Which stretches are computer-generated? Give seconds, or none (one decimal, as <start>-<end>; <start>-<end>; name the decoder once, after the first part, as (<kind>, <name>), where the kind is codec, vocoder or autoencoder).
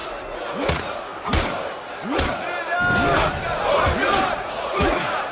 0.7-1.1 (vocoder, Vocos); 4.3-5.3